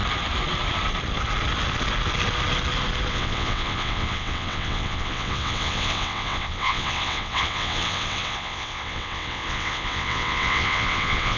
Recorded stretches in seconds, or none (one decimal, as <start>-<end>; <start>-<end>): 0.0-3.1